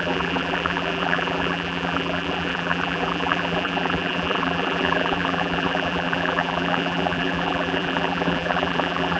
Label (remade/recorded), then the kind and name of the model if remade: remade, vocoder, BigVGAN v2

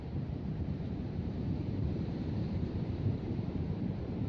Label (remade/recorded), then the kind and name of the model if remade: remade, vocoder, BigVGAN v2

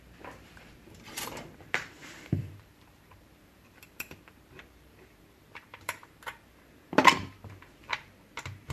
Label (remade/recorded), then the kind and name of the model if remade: remade, vocoder, BigVGAN v2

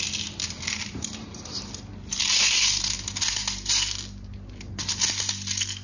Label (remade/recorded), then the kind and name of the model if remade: recorded